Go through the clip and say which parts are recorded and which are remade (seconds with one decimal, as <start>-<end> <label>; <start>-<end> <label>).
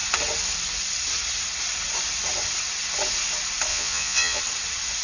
0.0-3.7 recorded; 3.7-4.4 remade; 4.4-5.0 recorded